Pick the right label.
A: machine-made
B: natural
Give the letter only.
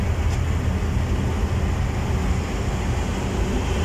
B